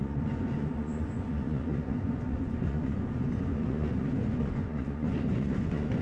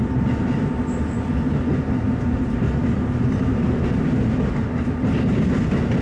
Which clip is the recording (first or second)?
second